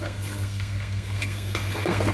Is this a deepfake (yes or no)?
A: yes